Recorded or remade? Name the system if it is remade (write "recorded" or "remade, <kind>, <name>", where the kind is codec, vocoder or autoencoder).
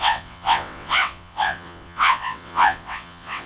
remade, vocoder, WaveNeXt